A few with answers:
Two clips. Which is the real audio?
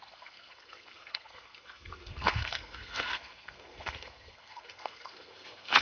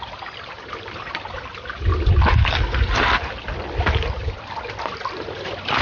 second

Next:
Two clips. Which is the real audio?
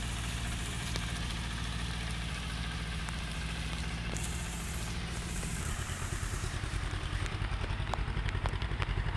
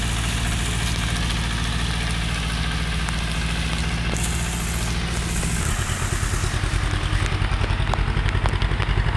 second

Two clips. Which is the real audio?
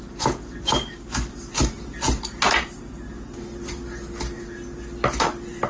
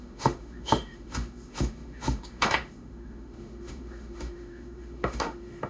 first